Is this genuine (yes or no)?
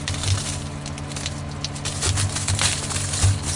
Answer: yes